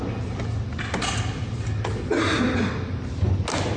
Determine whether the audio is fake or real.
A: real